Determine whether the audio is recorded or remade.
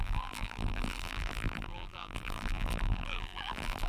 remade